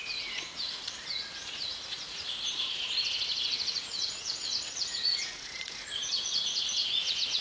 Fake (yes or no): yes